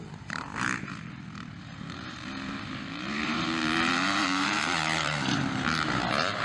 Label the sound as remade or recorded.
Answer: remade